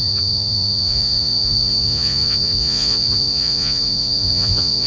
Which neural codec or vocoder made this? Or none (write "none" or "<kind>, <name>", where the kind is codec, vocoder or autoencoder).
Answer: vocoder, Vocos